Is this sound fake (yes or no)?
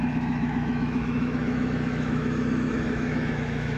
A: yes